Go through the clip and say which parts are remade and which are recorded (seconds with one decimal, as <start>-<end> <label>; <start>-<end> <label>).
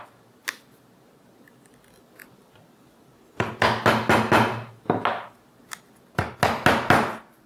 0.0-2.2 recorded; 2.2-3.5 remade; 3.5-7.5 recorded